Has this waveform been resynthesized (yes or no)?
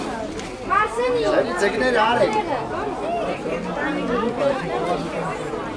no